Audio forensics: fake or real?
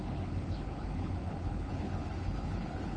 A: fake